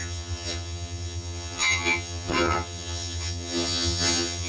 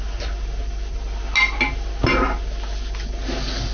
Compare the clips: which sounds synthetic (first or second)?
first